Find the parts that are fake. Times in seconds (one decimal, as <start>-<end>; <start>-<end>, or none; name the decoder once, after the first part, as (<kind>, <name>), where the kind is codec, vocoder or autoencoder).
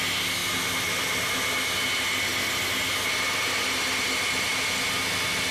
none